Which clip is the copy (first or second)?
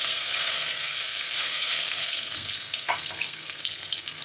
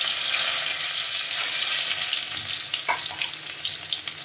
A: first